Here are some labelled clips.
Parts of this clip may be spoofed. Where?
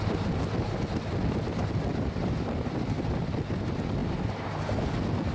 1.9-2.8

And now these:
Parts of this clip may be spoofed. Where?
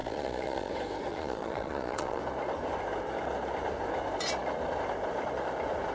0.0-0.7; 1.1-2.2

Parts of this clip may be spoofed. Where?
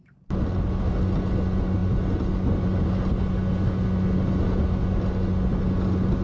none